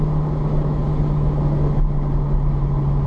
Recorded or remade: recorded